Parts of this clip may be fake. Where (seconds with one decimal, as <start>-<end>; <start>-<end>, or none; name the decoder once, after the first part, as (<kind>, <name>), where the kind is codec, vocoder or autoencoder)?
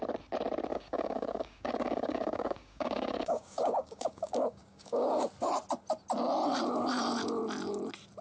0.7-5.1 (codec, DAC)